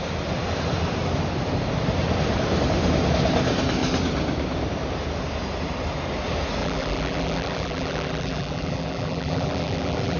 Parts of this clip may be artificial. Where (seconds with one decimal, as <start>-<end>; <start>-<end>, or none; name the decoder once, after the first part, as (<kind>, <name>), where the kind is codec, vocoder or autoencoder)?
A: 6.6-10.2 (vocoder, BigVGAN v2)